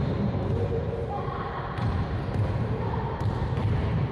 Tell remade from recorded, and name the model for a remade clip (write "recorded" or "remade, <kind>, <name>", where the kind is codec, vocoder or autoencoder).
remade, vocoder, BigVGAN v2